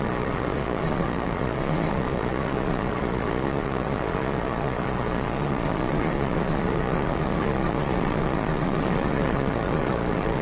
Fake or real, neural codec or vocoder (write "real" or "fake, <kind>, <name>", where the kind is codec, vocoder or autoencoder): fake, vocoder, Vocos